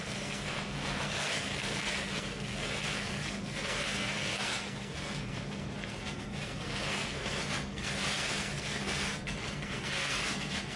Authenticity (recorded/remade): remade